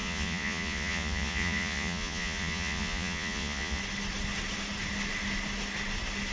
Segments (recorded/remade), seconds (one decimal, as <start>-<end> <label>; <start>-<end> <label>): 0.0-3.8 remade; 3.8-6.3 recorded